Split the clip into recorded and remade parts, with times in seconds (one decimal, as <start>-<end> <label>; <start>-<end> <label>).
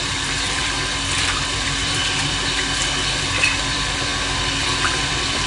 0.0-2.0 remade; 2.0-2.6 recorded; 2.6-4.1 remade; 4.1-4.6 recorded; 4.6-5.5 remade